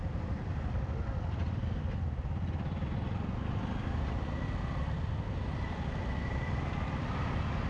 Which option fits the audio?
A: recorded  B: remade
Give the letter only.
A